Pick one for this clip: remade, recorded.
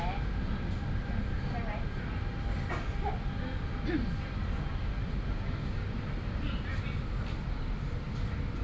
recorded